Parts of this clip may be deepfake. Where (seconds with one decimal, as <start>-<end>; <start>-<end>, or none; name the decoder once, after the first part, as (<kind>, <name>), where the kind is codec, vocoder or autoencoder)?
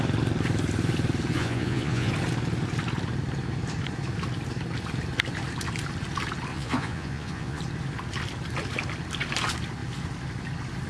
1.3-2.1 (vocoder, Vocos); 6.5-7.6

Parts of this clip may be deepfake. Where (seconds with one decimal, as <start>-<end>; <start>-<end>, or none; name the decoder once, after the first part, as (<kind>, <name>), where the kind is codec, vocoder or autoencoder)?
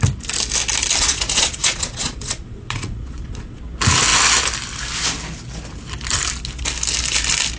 1.0-3.6 (vocoder, Vocos)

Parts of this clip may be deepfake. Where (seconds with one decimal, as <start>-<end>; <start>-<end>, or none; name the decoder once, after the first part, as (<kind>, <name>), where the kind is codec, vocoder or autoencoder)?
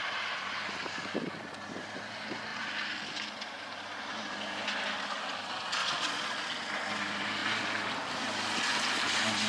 5.8-6.4 (vocoder, Vocos)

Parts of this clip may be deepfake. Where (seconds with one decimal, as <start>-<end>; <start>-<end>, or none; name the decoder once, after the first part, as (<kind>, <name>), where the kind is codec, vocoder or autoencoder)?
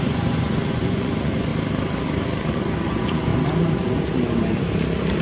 0.0-1.5 (vocoder, Vocos); 2.5-3.3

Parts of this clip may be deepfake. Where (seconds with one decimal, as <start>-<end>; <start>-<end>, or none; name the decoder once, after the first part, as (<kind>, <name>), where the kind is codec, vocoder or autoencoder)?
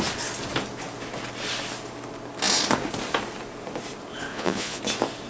4.3-4.8 (vocoder, Vocos)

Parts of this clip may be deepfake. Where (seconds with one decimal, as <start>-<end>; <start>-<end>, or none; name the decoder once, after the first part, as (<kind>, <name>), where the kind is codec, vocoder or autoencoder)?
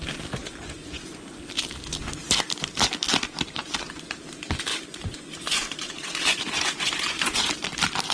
0.4-1.4 (vocoder, Vocos); 4.7-7.5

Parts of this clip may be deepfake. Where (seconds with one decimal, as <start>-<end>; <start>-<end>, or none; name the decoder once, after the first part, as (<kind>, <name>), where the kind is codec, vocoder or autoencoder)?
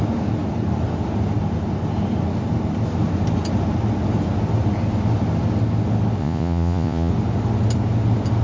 6.2-7.1 (vocoder, Vocos)